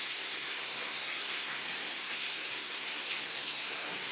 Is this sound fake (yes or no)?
yes